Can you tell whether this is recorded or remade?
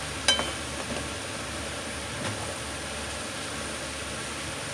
recorded